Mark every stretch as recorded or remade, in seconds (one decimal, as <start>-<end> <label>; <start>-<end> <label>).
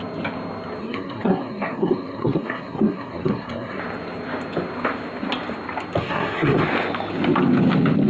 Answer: 0.0-0.8 recorded; 0.8-3.8 remade; 3.8-6.0 recorded; 6.0-6.6 remade; 6.6-8.1 recorded